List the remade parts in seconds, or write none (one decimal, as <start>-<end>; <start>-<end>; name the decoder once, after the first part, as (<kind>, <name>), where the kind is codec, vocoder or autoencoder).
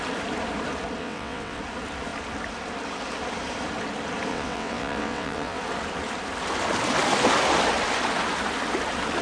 1.0-1.6 (vocoder, WaveNeXt); 4.3-5.6